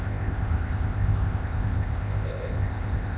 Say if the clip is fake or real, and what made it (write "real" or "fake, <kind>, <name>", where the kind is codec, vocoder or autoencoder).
fake, codec, ZipCodec